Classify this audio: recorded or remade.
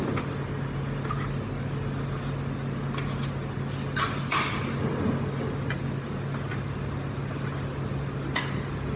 recorded